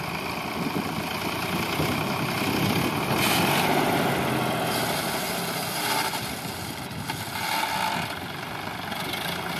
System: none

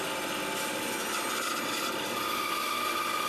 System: none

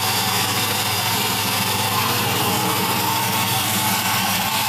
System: codec, SNAC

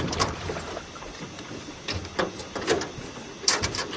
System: vocoder, BigVGAN v2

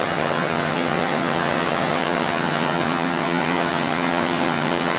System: vocoder, HiFi-GAN